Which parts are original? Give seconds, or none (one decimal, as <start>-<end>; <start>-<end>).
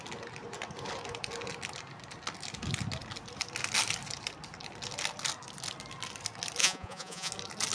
0.0-6.6; 7.3-7.7